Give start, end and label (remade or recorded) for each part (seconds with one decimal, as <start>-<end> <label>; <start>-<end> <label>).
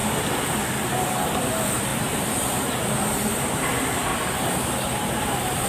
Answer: 0.0-1.4 recorded; 1.4-4.1 remade; 4.1-5.0 recorded; 5.0-5.7 remade